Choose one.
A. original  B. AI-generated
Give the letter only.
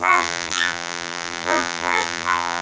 B